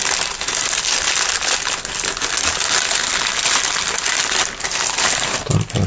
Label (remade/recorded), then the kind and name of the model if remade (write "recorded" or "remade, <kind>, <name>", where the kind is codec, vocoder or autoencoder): recorded